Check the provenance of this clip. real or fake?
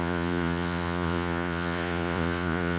fake